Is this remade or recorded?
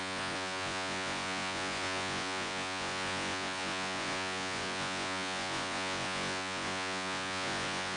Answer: remade